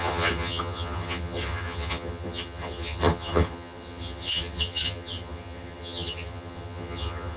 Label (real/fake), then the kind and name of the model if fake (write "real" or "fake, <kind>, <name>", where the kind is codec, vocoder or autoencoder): fake, vocoder, HiFi-GAN